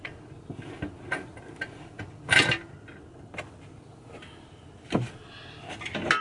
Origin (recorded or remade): recorded